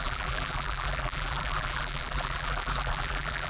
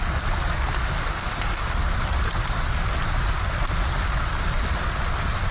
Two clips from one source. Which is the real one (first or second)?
second